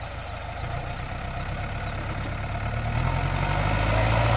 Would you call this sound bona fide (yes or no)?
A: yes